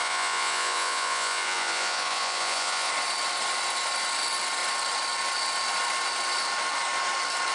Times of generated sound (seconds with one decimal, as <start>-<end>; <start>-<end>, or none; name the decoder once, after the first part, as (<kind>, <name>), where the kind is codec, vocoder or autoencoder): 0.0-2.9 (vocoder, Vocos)